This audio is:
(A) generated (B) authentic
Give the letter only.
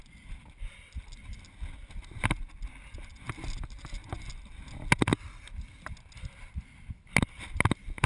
B